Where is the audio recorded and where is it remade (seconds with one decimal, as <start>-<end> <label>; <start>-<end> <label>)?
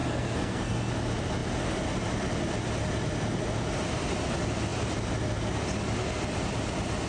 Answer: 0.0-0.9 remade; 0.9-7.1 recorded